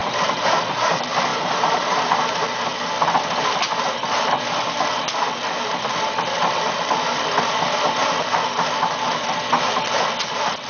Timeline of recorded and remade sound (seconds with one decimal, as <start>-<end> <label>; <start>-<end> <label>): 0.0-1.3 recorded; 1.3-2.1 remade; 2.1-10.7 recorded